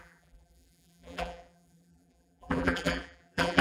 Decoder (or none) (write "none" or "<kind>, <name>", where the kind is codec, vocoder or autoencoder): vocoder, BigVGAN v2